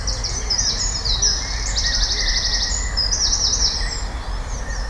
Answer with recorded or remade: recorded